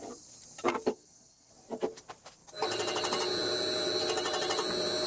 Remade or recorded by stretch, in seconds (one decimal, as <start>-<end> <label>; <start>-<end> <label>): 0.0-0.9 recorded; 0.9-1.5 remade; 1.5-5.1 recorded